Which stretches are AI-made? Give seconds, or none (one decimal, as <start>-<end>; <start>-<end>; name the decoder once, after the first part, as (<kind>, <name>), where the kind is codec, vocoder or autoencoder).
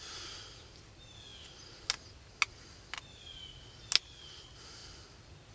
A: none